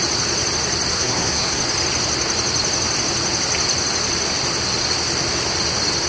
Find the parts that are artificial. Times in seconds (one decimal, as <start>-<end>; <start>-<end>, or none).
0.9-1.6